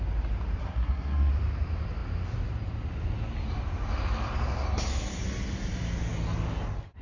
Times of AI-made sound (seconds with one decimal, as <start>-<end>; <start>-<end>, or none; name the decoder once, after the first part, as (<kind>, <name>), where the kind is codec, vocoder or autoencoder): 0.6-1.3 (codec, SNAC)